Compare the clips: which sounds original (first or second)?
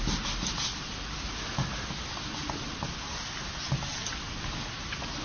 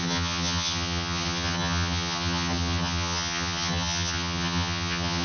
first